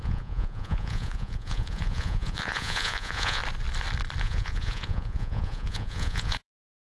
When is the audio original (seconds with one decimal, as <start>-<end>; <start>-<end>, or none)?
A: 3.4-4.2